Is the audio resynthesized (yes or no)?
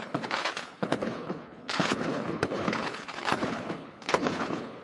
yes